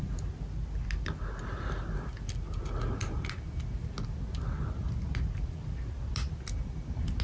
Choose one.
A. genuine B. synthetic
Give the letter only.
A